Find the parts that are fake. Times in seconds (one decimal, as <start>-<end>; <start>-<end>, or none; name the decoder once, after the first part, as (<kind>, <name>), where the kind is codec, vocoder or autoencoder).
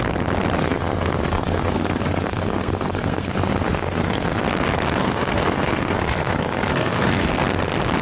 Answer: 0.6-3.3 (codec, SNAC); 3.7-4.4; 5.0-7.3